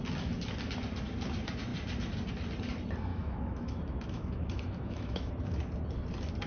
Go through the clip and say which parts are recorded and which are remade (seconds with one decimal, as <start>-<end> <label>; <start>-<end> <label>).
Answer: 0.0-3.1 recorded; 3.1-5.3 remade; 5.3-6.5 recorded